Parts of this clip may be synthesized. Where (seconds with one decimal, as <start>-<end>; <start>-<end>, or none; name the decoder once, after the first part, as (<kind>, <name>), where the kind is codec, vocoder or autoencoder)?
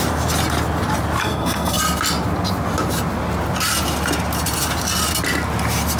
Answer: 1.2-1.8 (codec, SNAC)